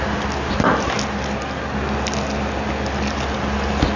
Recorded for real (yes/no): yes